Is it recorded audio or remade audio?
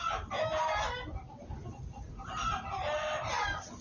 recorded